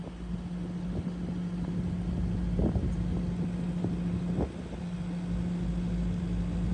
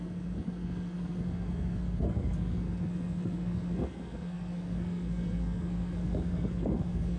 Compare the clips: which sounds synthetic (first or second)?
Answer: second